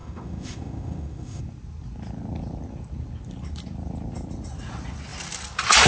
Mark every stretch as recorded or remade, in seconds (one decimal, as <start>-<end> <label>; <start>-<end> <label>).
0.0-1.4 remade; 1.4-5.9 recorded